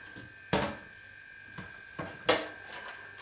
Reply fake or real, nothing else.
real